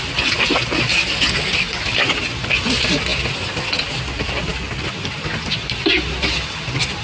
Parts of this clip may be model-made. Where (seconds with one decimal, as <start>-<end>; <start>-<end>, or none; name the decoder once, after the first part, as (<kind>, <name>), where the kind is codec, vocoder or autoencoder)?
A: none